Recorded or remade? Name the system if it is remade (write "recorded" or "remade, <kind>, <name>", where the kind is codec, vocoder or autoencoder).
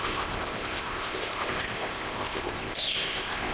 remade, codec, ZipCodec